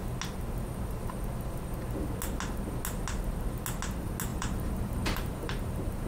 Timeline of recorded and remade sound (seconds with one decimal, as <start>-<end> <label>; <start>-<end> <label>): 0.0-4.3 recorded; 4.3-6.1 remade

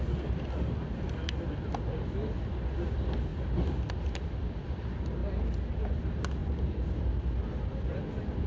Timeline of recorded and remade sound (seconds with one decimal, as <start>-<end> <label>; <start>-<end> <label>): 0.0-5.2 recorded; 5.2-6.0 remade; 6.0-8.5 recorded

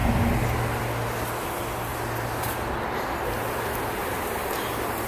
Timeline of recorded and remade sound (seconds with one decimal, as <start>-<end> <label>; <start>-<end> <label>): 0.0-1.9 remade; 1.9-5.1 recorded